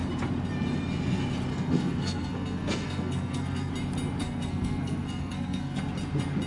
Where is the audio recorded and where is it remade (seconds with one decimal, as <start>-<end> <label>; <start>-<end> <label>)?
0.0-1.5 recorded; 1.5-3.7 remade; 3.7-4.2 recorded; 4.2-5.8 remade; 5.8-6.5 recorded